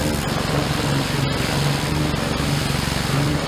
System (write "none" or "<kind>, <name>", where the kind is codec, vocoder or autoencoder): none